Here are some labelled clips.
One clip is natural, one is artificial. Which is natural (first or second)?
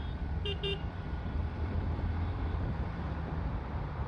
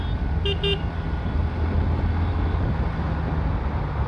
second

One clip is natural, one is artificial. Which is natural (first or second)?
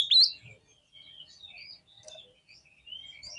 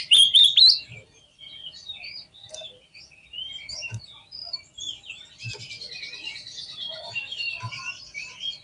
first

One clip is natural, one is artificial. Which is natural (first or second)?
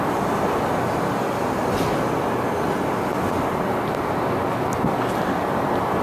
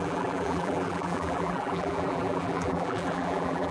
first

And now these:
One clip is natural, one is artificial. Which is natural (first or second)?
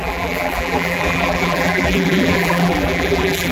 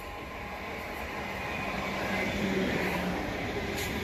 second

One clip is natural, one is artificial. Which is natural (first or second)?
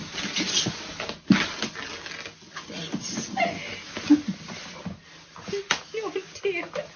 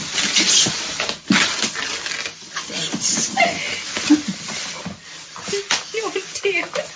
first